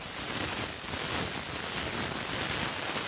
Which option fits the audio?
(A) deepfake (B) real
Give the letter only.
B